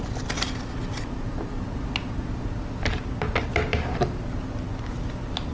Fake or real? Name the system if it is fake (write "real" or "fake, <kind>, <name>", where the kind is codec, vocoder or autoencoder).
real